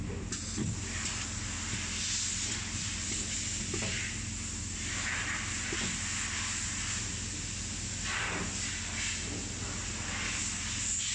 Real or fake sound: real